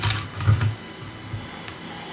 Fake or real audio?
real